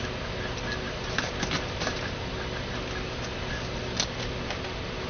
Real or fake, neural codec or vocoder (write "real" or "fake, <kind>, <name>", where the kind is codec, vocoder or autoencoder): real